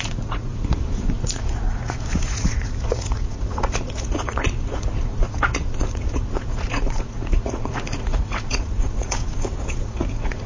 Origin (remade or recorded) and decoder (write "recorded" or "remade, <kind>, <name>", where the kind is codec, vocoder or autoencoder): remade, vocoder, Vocos